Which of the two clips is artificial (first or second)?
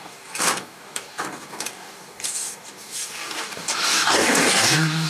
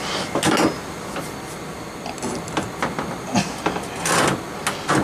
first